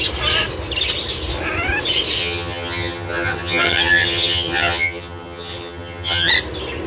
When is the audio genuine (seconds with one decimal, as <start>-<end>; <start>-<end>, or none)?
0.0-2.2; 6.3-6.9